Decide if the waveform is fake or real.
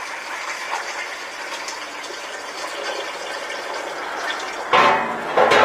real